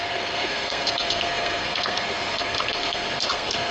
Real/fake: fake